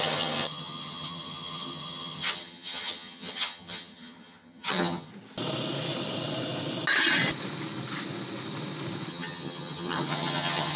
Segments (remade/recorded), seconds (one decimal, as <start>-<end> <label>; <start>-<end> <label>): 0.0-5.1 remade; 5.1-9.1 recorded; 9.1-10.8 remade